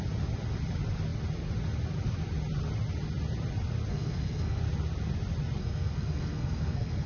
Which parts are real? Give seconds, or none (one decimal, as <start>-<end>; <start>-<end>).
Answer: 0.0-3.9; 4.6-5.6